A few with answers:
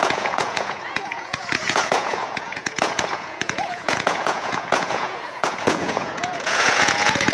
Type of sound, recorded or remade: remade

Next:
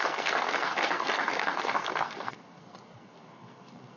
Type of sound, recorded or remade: remade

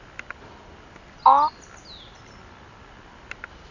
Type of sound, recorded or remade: recorded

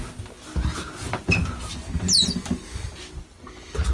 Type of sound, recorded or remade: recorded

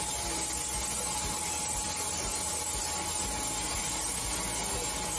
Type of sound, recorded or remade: recorded